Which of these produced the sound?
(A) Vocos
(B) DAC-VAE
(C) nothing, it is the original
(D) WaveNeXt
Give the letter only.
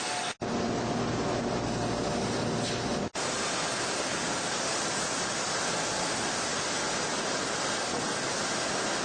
C